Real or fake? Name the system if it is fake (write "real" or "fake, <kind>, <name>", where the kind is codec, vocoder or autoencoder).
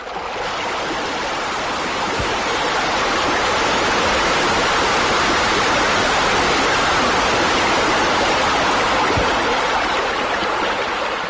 real